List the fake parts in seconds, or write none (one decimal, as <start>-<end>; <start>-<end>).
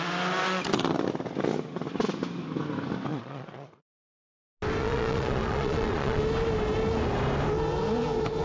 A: 3.1-3.9; 4.8-6.2